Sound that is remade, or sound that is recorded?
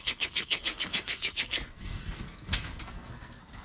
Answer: remade